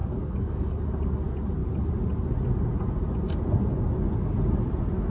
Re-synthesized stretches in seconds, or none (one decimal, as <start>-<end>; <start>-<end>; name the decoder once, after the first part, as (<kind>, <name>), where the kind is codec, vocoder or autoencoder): 0.0-0.8 (codec, DAC)